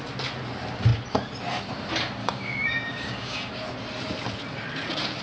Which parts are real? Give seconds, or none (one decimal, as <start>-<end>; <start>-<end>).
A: 0.0-2.2; 3.5-5.2